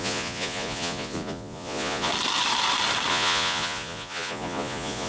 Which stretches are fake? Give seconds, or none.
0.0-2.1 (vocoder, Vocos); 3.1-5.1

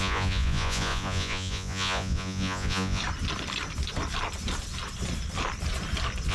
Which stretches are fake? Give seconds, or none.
0.0-3.0 (vocoder, Vocos)